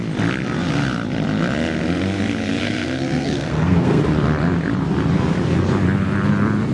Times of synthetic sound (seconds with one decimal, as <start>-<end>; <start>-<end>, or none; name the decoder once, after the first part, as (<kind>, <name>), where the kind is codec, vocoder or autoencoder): 2.6-4.0 (codec, SNAC)